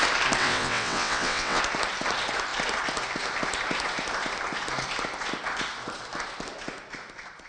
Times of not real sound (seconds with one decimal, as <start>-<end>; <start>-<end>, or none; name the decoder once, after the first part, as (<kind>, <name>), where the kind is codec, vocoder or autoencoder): 0.4-1.6 (vocoder, WaveNeXt)